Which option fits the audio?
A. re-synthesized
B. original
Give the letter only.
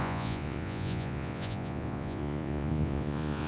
A